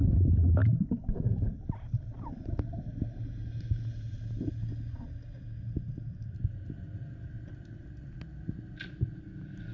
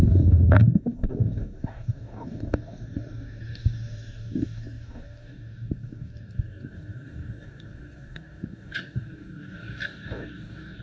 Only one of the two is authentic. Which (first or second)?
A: first